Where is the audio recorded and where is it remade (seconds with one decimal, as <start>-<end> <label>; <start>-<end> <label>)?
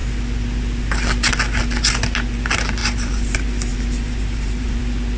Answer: 0.0-2.8 recorded; 2.8-3.3 remade; 3.3-3.7 recorded; 3.7-4.8 remade; 4.8-5.2 recorded